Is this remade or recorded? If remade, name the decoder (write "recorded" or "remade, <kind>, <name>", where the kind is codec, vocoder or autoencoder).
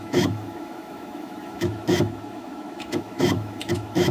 remade, autoencoder, DAC-VAE